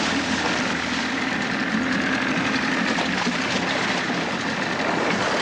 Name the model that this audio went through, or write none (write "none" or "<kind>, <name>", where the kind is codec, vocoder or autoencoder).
none